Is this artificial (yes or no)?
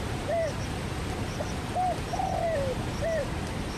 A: no